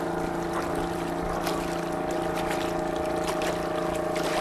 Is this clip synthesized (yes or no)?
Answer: no